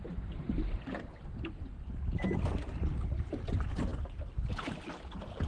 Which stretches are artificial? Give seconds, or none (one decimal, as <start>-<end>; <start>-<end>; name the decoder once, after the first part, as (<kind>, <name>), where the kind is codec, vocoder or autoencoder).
none